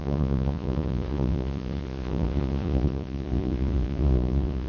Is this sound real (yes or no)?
no